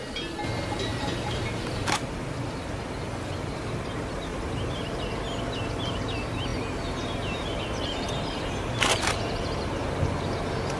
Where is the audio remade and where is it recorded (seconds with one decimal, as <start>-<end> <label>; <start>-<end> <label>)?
0.0-0.9 recorded; 0.9-2.5 remade; 2.5-4.3 recorded; 4.3-5.0 remade; 5.0-6.5 recorded; 6.5-9.7 remade; 9.7-10.8 recorded